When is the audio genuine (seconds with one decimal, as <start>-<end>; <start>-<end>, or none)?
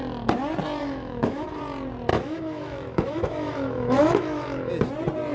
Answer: 0.0-0.8; 1.6-2.1; 4.7-5.3